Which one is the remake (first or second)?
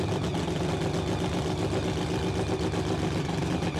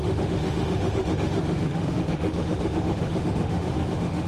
second